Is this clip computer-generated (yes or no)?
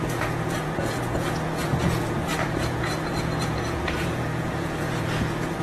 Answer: yes